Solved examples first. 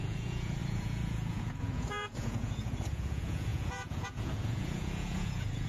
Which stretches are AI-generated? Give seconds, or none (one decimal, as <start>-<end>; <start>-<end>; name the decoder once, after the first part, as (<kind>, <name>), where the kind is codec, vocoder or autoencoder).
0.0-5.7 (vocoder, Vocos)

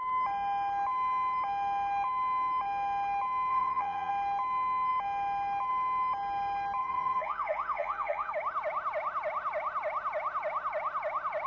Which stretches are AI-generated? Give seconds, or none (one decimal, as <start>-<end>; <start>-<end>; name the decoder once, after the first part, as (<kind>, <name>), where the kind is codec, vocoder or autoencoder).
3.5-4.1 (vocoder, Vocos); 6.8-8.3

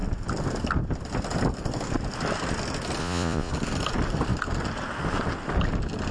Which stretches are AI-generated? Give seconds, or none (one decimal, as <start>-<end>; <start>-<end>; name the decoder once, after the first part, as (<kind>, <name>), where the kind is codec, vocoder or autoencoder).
3.0-3.5 (vocoder, Vocos)

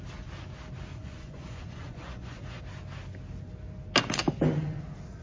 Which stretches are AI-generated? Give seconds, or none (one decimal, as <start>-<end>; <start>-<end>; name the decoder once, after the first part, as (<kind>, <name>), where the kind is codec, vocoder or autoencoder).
0.9-2.6 (vocoder, Vocos)

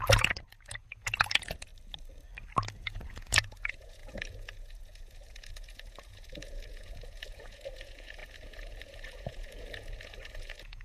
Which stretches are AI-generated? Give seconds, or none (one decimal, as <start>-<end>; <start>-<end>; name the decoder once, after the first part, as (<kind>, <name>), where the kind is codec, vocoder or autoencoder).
0.0-1.7 (vocoder, Vocos); 2.7-10.8

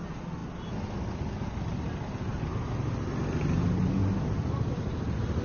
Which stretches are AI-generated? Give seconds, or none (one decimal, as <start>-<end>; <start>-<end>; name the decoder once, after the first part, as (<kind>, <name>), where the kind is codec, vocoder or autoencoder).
none

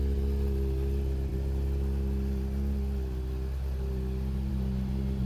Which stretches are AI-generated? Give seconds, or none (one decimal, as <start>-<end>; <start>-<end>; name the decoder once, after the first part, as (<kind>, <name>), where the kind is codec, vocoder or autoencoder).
none

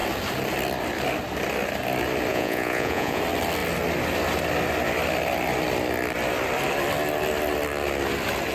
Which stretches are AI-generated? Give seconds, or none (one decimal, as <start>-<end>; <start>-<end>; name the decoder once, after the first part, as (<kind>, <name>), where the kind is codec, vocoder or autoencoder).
2.3-3.2 (vocoder, Vocos)